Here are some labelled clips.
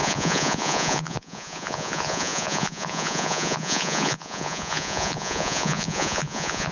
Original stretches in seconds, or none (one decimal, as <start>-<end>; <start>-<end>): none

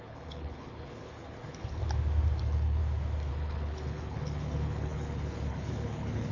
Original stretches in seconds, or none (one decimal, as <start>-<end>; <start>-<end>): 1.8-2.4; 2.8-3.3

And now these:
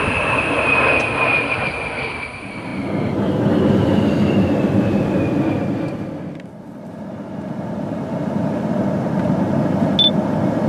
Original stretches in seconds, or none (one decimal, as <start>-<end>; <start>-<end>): 0.0-10.7

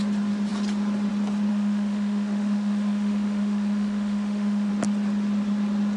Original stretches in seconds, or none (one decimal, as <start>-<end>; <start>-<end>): 0.0-1.5; 4.7-6.0